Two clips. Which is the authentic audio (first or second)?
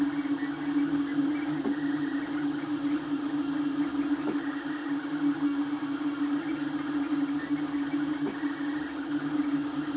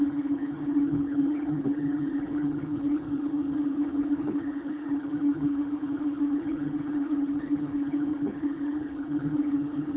first